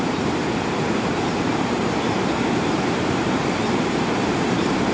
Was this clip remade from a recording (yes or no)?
yes